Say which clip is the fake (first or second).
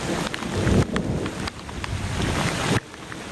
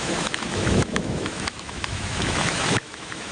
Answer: second